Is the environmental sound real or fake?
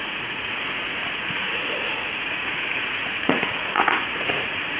fake